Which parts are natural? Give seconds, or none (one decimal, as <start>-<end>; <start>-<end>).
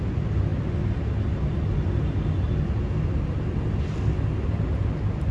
0.0-5.3